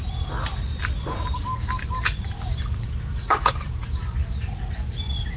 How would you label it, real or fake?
real